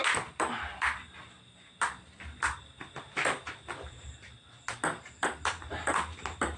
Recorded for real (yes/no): yes